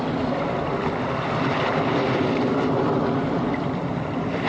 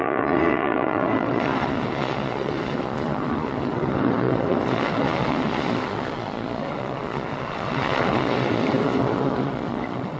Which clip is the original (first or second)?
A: first